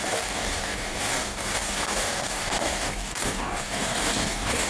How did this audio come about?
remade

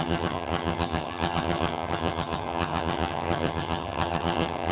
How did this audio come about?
remade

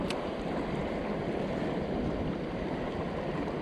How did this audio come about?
recorded